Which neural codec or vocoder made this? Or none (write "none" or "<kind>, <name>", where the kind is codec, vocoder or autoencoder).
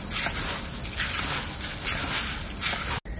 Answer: none